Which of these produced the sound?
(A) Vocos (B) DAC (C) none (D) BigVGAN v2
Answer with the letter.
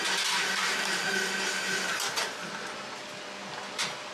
C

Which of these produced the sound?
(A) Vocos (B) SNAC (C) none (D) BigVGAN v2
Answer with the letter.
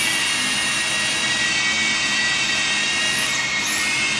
C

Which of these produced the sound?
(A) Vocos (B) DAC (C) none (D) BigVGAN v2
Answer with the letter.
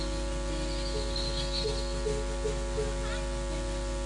C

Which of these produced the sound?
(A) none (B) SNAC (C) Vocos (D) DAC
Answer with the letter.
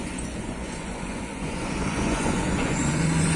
C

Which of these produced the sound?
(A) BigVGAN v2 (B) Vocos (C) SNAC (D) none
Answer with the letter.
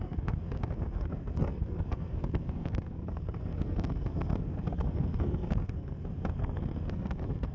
C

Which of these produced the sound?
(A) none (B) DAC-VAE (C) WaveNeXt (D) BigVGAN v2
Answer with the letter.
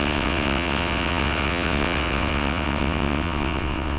C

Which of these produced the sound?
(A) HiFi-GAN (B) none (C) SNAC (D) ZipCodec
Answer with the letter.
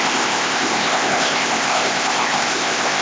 D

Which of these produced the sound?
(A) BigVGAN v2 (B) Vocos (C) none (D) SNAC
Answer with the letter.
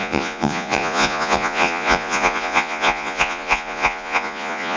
B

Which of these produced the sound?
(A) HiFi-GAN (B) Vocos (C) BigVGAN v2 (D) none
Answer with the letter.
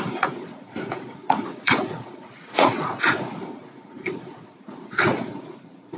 B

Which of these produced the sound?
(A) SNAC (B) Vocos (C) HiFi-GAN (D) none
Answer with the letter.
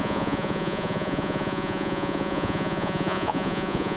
B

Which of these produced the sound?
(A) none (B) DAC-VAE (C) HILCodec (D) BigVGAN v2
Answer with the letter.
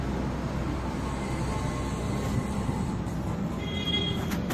A